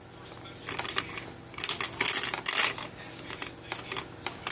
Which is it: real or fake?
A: real